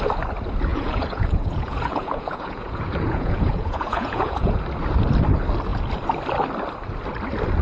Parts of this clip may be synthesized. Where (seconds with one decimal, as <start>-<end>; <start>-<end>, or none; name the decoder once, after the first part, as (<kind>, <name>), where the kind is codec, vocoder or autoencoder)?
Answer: 0.7-4.6 (vocoder, Vocos)